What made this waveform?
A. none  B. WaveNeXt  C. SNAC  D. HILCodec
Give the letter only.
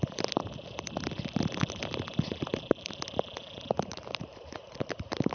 A